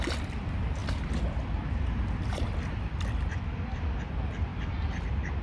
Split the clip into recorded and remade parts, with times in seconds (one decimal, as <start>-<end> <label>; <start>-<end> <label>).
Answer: 0.0-0.8 recorded; 0.8-4.0 remade; 4.0-4.5 recorded; 4.5-5.4 remade